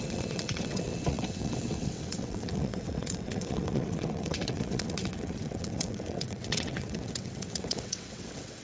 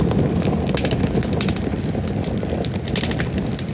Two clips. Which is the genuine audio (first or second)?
second